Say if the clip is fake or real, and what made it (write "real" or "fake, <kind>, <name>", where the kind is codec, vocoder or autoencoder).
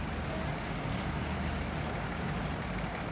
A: real